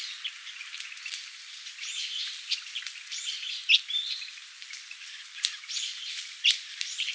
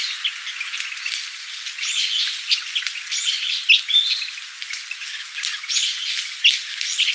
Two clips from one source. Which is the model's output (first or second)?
first